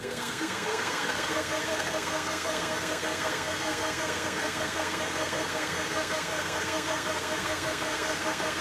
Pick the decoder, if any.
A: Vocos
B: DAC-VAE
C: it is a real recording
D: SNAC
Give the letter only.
D